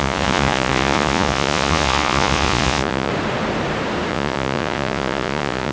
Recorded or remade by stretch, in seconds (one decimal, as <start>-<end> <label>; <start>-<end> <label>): 0.0-3.1 remade; 3.1-4.1 recorded; 4.1-5.7 remade